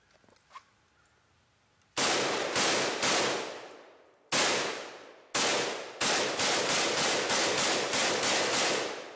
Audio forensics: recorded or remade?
recorded